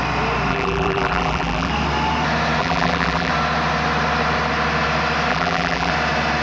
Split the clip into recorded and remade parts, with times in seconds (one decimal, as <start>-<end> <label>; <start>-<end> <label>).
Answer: 0.0-0.5 recorded; 0.5-1.7 remade; 1.7-2.6 recorded; 2.6-3.3 remade; 3.3-5.3 recorded; 5.3-5.9 remade; 5.9-6.4 recorded